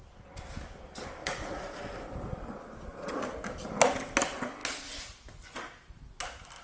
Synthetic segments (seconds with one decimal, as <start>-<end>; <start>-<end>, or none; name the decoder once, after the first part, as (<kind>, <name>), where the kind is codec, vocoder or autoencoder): 1.2-1.8 (vocoder, Vocos)